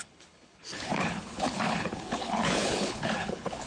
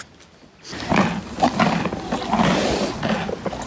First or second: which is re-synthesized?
first